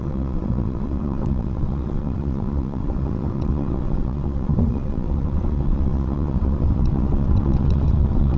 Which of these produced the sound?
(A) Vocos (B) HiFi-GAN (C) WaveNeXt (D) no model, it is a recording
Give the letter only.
C